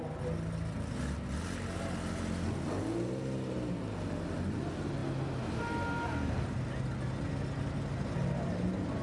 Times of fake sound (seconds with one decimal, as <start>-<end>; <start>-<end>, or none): none